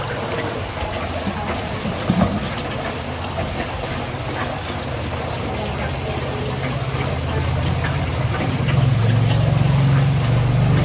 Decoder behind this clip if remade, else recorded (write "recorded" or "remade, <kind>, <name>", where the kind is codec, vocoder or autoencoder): recorded